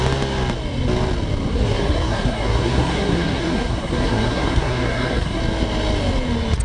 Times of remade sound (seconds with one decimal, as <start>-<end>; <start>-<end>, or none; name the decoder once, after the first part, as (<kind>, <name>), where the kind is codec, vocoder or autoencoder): 1.5-5.4 (codec, SNAC)